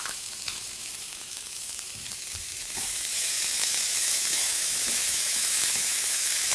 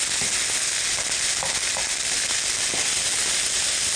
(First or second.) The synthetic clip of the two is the first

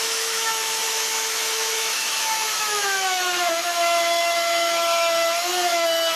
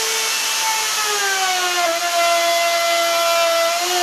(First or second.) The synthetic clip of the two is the first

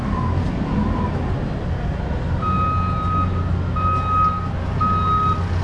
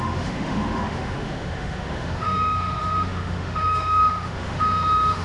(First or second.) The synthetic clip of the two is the second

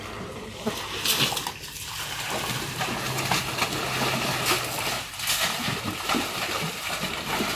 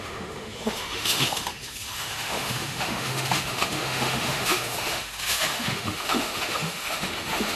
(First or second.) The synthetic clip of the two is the second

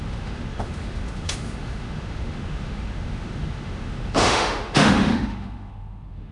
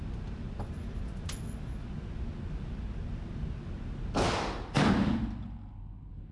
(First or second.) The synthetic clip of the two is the first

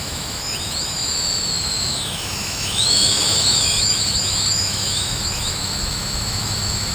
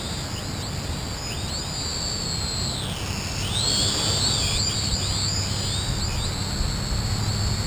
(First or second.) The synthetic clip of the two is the first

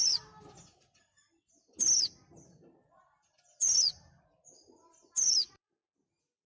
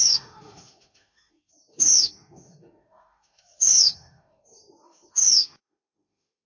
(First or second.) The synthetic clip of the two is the second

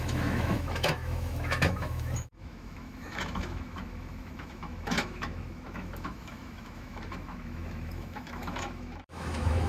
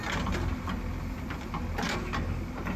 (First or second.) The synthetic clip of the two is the first